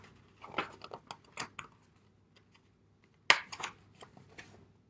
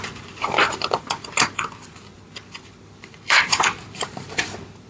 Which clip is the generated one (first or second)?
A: second